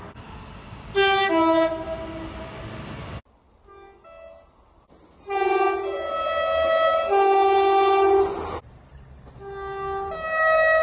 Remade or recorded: recorded